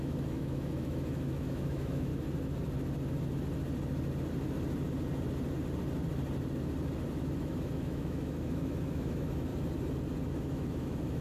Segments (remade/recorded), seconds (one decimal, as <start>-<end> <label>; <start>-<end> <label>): 0.0-2.1 remade; 2.1-7.1 recorded; 7.1-9.5 remade; 9.5-10.3 recorded; 10.3-11.2 remade